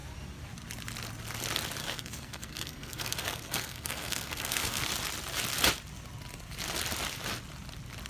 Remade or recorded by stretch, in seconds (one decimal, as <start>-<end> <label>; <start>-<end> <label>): 0.0-1.8 recorded; 1.8-4.8 remade; 4.8-8.1 recorded